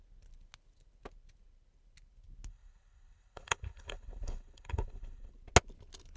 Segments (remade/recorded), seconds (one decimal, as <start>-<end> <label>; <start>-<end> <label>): 0.0-2.5 recorded; 2.5-5.3 remade; 5.3-6.2 recorded